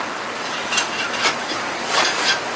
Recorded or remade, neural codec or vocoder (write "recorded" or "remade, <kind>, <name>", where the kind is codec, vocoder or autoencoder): remade, vocoder, BigVGAN v2